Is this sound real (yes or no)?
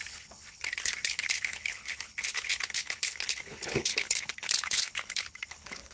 no